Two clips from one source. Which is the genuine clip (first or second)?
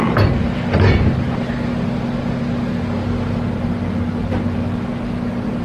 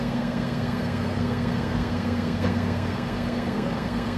first